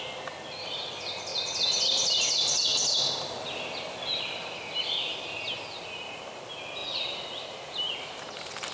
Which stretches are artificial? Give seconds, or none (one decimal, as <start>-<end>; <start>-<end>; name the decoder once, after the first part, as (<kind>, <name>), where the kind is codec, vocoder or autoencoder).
none